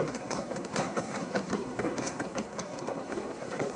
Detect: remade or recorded remade